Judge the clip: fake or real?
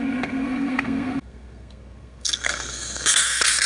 fake